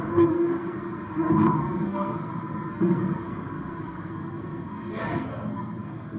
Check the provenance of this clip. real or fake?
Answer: fake